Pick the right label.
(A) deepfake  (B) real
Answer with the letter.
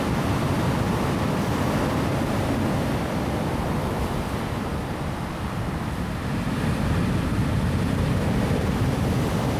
B